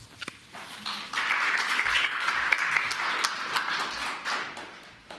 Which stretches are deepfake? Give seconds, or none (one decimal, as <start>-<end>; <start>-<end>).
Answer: 1.6-2.3